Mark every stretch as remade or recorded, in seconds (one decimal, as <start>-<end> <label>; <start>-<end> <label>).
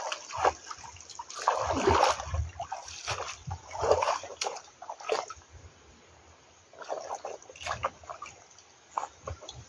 0.0-3.4 recorded; 3.4-4.9 remade; 4.9-9.7 recorded